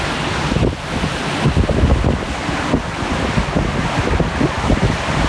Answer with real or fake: real